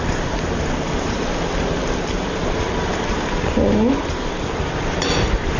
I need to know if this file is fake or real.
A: real